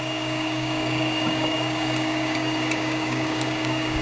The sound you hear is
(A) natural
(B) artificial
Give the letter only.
B